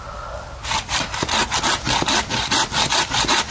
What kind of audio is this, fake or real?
real